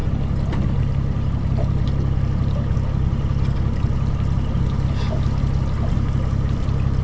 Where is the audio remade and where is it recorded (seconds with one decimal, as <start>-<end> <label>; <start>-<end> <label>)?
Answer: 0.0-7.0 recorded